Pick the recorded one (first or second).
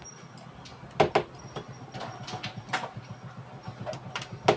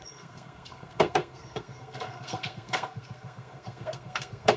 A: first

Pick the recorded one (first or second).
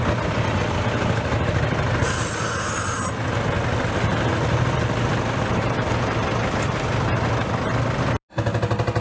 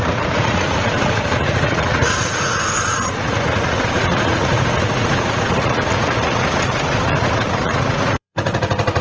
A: first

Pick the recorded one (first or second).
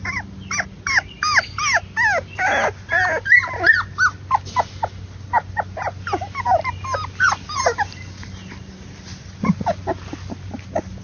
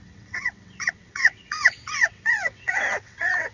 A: first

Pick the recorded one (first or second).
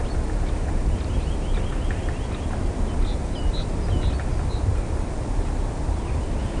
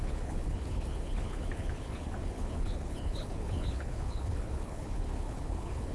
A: first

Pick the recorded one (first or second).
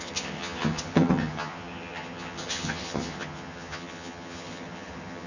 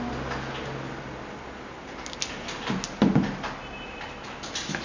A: second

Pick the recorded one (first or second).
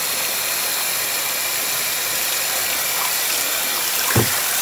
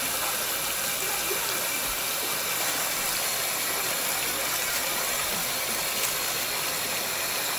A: second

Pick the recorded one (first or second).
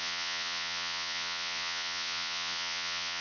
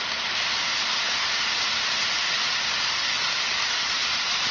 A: second